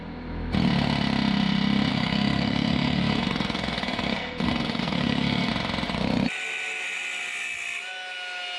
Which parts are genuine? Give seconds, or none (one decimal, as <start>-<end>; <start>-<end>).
0.0-1.9; 5.5-8.6